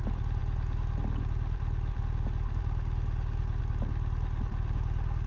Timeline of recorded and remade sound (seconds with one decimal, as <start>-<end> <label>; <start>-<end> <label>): 0.0-5.3 recorded